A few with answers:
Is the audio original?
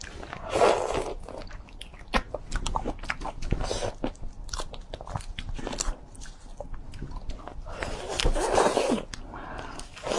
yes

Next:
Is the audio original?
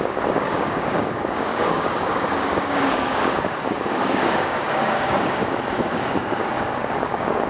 no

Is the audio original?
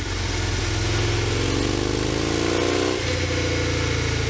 yes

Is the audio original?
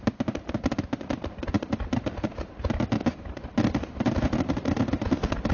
yes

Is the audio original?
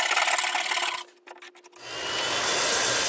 yes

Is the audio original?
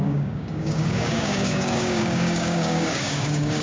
no